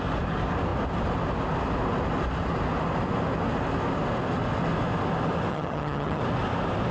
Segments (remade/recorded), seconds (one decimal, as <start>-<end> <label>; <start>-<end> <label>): 0.0-5.5 recorded; 5.5-6.2 remade; 6.2-6.9 recorded